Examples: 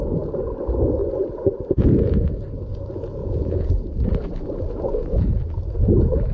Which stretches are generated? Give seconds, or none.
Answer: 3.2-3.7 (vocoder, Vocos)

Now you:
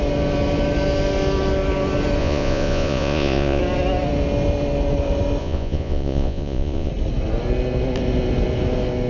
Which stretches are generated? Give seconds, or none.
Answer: 2.2-3.6 (vocoder, Vocos); 5.4-6.9